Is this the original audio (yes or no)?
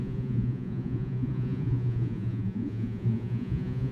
no